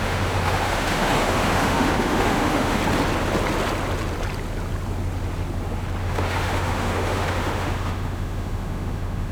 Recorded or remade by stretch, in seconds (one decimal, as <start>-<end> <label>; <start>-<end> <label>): 0.0-2.8 remade; 2.8-6.0 recorded; 6.0-9.3 remade